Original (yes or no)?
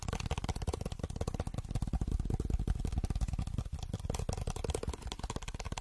yes